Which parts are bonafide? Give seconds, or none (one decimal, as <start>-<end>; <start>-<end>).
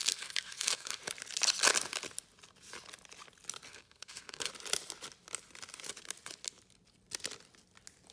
1.0-3.7; 4.5-8.1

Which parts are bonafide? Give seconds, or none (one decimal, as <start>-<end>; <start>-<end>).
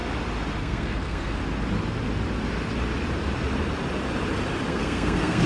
0.0-0.6; 1.4-4.7